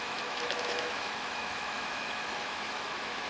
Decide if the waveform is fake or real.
fake